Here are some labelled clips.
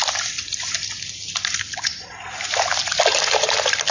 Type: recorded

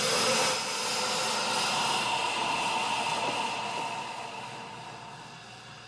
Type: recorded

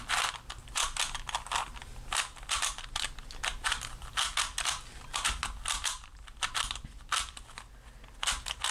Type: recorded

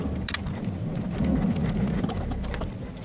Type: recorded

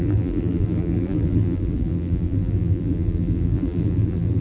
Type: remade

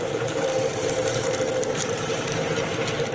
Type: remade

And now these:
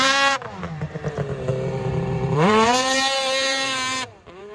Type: remade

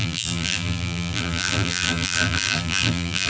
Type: remade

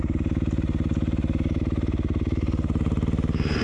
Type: remade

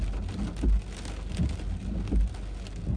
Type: recorded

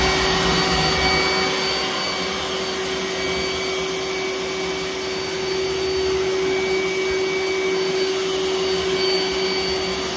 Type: recorded